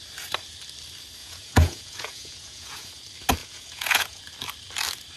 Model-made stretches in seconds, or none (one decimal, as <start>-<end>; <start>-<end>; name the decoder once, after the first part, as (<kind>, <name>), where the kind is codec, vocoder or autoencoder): 1.2-3.0 (vocoder, Vocos); 3.4-4.2

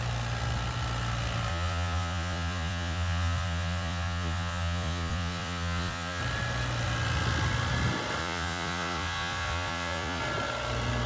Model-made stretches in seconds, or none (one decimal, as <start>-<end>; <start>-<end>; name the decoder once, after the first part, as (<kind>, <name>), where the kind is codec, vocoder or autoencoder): 1.5-6.2 (vocoder, Vocos); 8.2-10.2

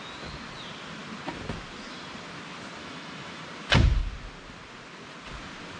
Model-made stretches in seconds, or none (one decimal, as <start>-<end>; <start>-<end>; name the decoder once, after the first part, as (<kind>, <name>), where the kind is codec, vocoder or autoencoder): 2.8-3.4 (autoencoder, DAC-VAE)